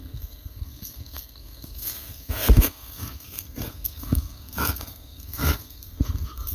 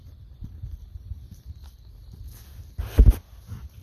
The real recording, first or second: second